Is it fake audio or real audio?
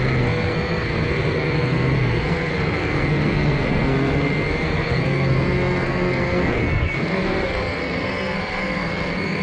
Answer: fake